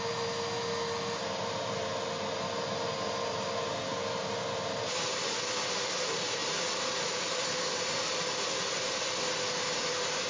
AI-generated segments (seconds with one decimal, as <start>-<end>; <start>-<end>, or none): none